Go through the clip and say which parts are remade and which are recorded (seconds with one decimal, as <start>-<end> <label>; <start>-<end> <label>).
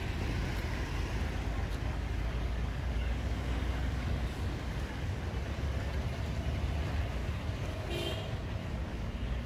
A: 0.0-1.7 recorded; 1.7-5.2 remade; 5.2-7.2 recorded; 7.2-7.9 remade; 7.9-8.6 recorded; 8.6-9.5 remade